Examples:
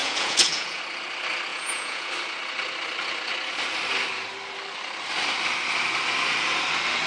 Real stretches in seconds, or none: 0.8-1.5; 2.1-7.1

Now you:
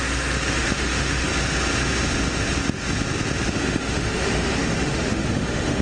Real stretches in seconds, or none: 1.3-3.5

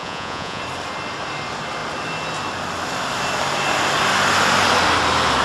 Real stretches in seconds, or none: 0.6-5.4

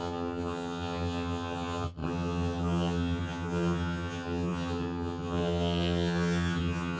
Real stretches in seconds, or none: none

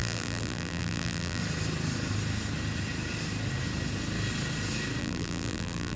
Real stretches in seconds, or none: 1.4-5.0

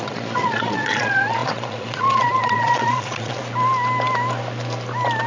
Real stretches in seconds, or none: 3.4-5.3

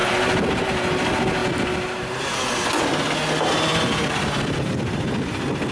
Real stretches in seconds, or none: 0.0-5.7

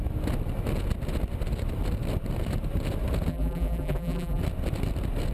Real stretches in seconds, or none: 0.0-3.3; 4.4-5.3